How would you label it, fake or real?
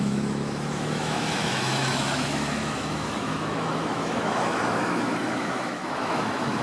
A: fake